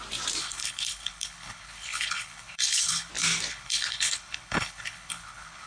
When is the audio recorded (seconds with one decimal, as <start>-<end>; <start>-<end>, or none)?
0.0-0.4; 3.1-3.5